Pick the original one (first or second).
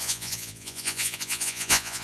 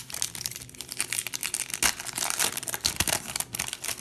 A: second